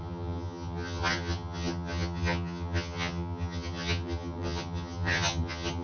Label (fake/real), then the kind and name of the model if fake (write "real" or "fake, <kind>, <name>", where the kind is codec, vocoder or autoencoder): fake, vocoder, HiFi-GAN